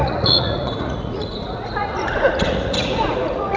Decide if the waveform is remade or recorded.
remade